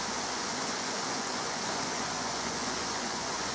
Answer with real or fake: fake